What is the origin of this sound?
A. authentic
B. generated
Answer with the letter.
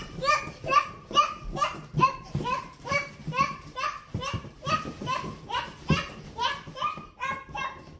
B